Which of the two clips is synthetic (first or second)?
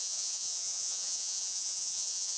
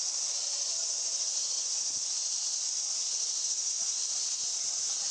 first